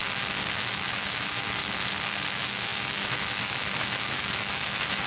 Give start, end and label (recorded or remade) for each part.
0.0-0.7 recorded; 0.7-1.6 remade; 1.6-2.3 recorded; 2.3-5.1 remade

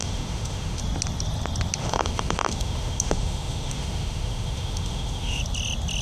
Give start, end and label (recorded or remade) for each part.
0.0-0.8 remade; 0.8-1.8 recorded; 1.8-5.4 remade; 5.4-6.0 recorded

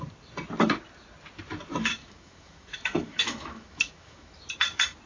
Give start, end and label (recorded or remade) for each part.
0.0-2.0 recorded; 2.0-4.3 remade; 4.3-5.1 recorded

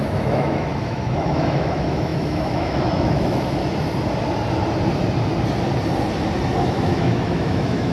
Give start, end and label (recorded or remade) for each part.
0.0-3.6 remade; 3.6-6.6 recorded; 6.6-7.9 remade

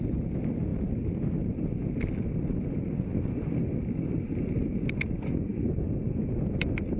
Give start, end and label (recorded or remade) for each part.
0.0-7.0 recorded

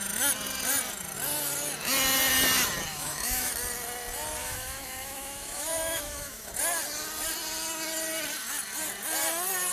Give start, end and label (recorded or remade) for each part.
0.0-2.9 recorded; 2.9-3.5 remade; 3.5-4.4 recorded; 4.4-6.5 remade; 6.5-9.7 recorded

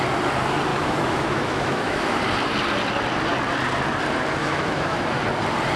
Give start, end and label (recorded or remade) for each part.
0.0-0.7 recorded; 0.7-2.2 remade; 2.2-4.4 recorded; 4.4-5.2 remade; 5.2-5.8 recorded